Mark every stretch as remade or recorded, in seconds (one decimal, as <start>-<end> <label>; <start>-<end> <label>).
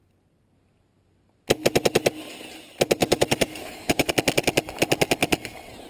0.0-3.0 recorded; 3.0-4.1 remade; 4.1-5.9 recorded